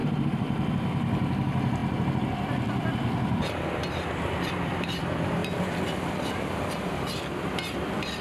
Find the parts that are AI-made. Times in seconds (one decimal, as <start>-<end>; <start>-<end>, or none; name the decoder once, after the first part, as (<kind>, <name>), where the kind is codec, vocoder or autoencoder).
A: 0.0-1.8 (vocoder, BigVGAN v2); 3.9-5.4; 6.1-8.2